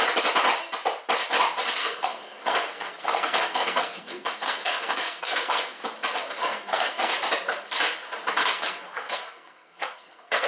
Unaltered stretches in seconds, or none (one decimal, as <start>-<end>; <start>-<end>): 0.0-1.8; 5.8-6.4; 7.1-8.4